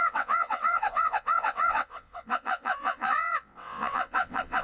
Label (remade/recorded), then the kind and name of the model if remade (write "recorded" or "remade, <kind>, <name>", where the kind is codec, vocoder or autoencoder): remade, vocoder, WaveNeXt